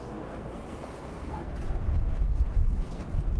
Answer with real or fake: fake